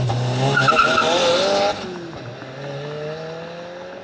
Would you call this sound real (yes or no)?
yes